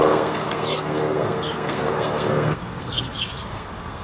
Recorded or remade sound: remade